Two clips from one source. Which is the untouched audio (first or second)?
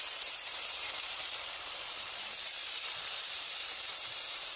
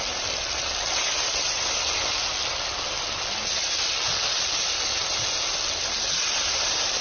second